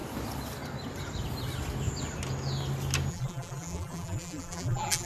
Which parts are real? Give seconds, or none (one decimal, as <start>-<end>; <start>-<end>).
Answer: 0.0-3.1